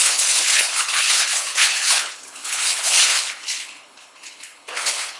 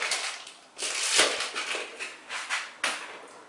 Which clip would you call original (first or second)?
second